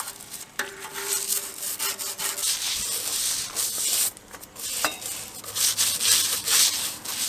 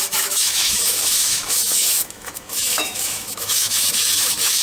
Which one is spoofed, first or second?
second